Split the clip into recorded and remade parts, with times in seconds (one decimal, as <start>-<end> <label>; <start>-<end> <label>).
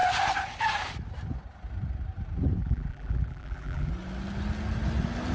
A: 0.0-2.6 recorded; 2.6-3.9 remade; 3.9-5.3 recorded